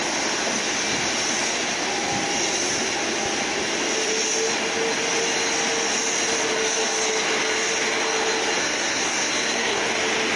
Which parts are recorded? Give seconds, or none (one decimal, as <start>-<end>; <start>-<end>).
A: 0.0-8.6; 9.9-10.4